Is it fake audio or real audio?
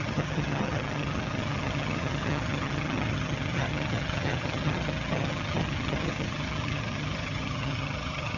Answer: fake